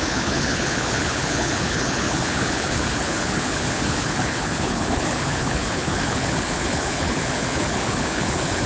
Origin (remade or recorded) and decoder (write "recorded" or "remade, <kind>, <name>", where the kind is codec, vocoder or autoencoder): remade, codec, HILCodec